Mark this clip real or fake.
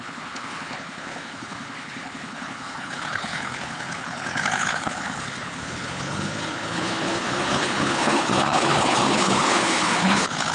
fake